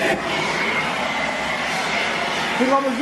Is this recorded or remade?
recorded